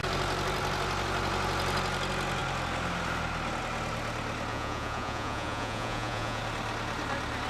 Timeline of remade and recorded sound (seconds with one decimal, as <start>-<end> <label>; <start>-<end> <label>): 0.0-4.5 recorded; 4.5-6.4 remade; 6.4-7.5 recorded